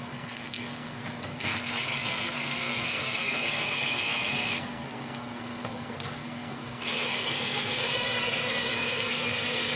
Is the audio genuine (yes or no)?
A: no